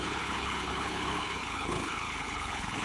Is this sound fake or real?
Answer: fake